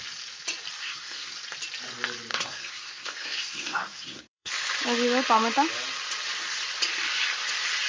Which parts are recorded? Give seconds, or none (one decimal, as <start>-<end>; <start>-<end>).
0.0-0.8; 1.3-2.3; 4.5-7.9